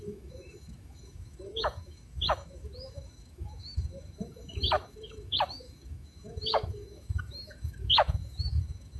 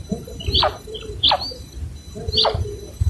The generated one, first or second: first